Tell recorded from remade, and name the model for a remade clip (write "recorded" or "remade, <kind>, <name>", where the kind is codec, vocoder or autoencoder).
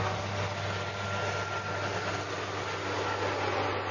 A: recorded